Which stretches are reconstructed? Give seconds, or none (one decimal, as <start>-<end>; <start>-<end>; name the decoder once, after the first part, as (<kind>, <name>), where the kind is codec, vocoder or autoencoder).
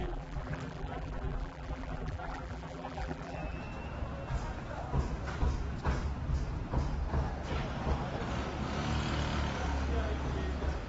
0.0-3.6 (vocoder, BigVGAN v2)